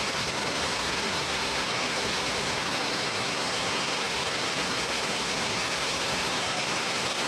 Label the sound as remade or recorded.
remade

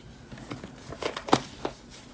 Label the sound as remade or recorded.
recorded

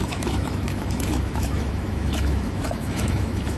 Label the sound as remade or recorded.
remade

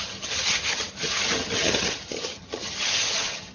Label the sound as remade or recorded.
remade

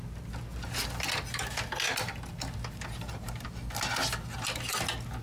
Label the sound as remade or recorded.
recorded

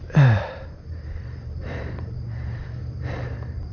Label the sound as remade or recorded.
remade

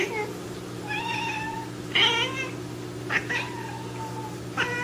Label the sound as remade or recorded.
recorded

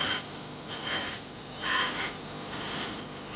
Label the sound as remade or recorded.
recorded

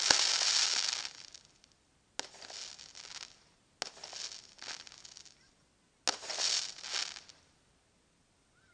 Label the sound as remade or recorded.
recorded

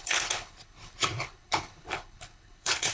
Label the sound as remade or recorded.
remade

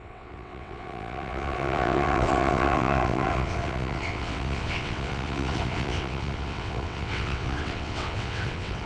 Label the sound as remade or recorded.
remade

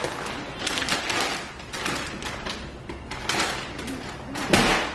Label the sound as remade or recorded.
recorded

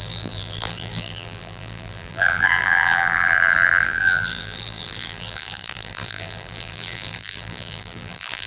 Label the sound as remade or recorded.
remade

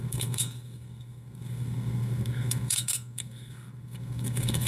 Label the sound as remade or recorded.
remade